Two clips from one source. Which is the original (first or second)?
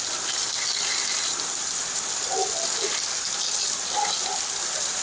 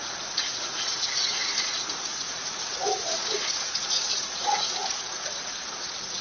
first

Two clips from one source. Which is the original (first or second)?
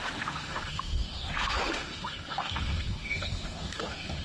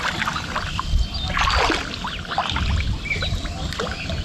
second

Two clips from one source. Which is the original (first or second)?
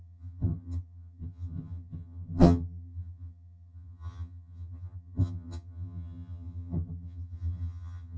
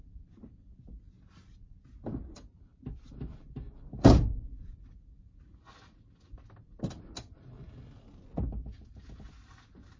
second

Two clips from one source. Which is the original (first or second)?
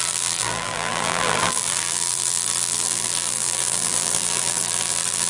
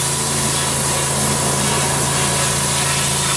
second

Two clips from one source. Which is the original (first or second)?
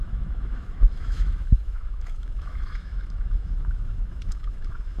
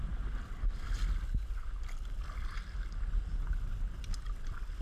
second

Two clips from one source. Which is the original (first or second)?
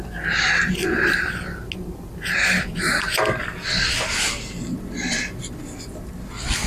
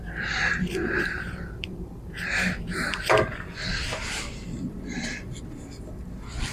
first